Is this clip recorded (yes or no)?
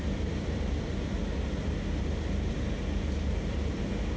yes